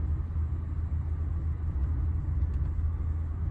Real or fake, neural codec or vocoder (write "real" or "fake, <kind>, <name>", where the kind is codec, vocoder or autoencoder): real